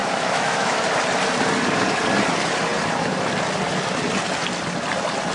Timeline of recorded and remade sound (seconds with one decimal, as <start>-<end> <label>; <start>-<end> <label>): 0.0-0.8 remade; 0.8-5.3 recorded